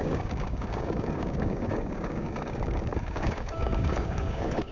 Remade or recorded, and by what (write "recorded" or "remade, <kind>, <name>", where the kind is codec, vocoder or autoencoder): remade, codec, DAC